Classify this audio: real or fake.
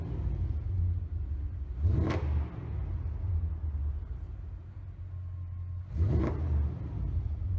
real